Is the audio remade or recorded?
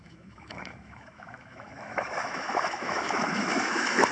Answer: remade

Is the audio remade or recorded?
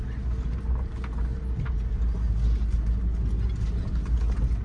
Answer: recorded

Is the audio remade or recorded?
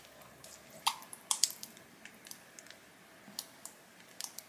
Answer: recorded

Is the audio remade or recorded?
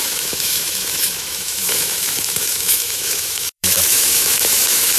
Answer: remade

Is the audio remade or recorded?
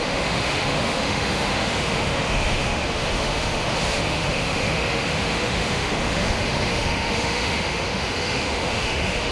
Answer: remade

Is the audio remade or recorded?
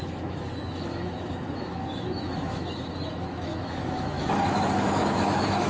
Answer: remade